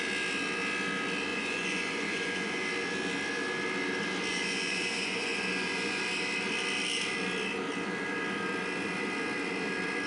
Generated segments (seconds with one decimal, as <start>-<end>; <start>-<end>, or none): 1.3-2.7; 4.3-6.0